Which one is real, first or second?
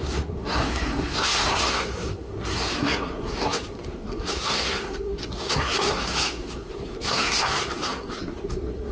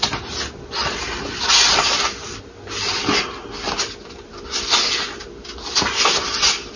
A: second